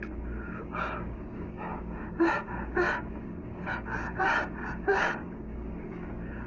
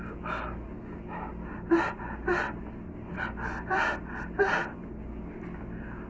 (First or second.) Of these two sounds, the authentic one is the second